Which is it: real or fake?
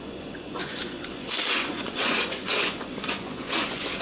fake